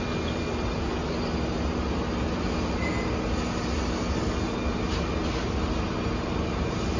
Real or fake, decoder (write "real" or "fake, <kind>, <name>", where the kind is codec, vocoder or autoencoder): real